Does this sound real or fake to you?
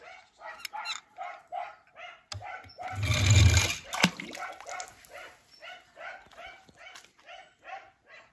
real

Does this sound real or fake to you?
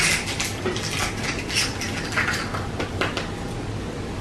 real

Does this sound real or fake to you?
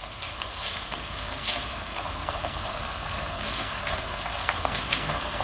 fake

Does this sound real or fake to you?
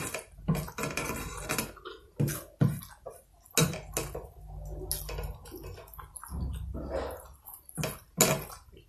real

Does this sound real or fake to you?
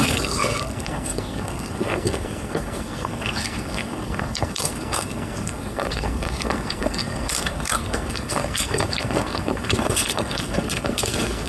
fake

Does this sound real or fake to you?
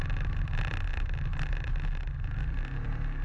real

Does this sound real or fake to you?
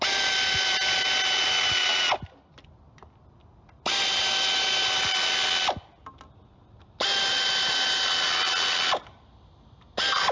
real